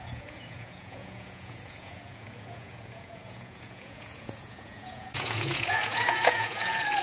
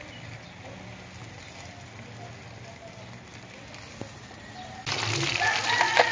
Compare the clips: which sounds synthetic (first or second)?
first